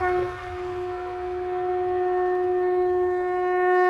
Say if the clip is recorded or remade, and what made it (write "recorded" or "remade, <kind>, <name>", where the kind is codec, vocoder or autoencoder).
remade, codec, SNAC